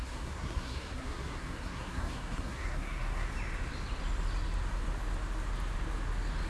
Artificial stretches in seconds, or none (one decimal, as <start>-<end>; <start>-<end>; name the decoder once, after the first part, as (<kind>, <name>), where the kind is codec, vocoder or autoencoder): 0.0-3.3 (codec, SNAC)

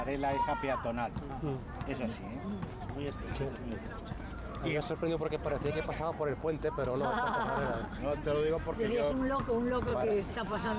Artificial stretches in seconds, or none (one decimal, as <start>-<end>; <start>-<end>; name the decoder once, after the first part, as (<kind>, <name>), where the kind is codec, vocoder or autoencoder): 3.8-4.4 (vocoder, BigVGAN v2); 9.9-10.8

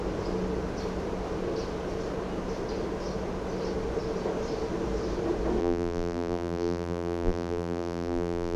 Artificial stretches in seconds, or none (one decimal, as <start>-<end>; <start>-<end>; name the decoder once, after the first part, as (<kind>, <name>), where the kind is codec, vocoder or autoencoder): 5.6-8.6 (vocoder, BigVGAN v2)

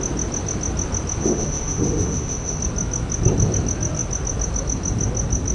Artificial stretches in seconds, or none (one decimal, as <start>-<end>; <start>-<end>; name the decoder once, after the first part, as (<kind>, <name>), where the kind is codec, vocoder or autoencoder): 1.2-2.6 (autoencoder, DAC-VAE)